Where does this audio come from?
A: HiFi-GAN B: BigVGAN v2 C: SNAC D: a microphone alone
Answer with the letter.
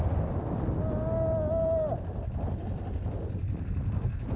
D